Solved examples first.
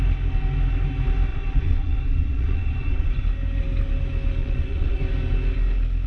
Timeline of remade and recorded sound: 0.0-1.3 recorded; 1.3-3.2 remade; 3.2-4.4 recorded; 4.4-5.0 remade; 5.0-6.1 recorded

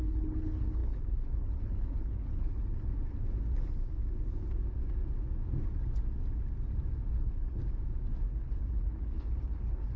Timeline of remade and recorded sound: 0.0-2.9 remade; 2.9-7.1 recorded; 7.1-7.6 remade; 7.6-8.3 recorded; 8.3-10.0 remade

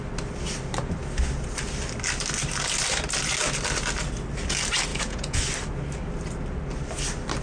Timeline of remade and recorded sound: 0.0-4.9 recorded; 4.9-5.4 remade; 5.4-7.4 recorded